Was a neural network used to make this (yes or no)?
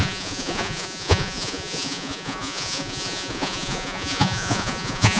yes